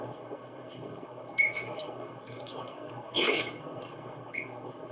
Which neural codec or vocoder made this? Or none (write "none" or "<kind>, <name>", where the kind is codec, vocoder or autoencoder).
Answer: codec, SNAC